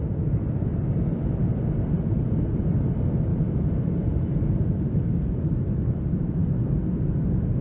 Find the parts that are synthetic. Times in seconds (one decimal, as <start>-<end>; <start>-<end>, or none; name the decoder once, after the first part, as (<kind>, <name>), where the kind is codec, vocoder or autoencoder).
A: 3.3-6.8 (vocoder, BigVGAN v2)